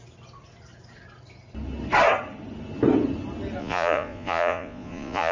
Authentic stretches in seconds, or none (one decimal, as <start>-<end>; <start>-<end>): 0.0-3.6